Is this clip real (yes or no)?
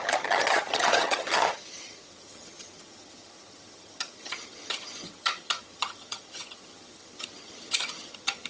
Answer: no